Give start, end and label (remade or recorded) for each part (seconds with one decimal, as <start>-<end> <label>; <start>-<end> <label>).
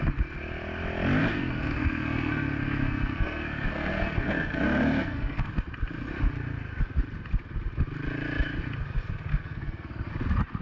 0.0-1.2 recorded; 1.2-5.5 remade; 5.5-9.3 recorded; 9.3-10.1 remade; 10.1-10.6 recorded